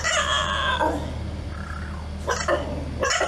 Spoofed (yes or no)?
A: no